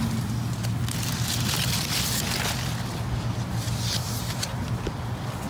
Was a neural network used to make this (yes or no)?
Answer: no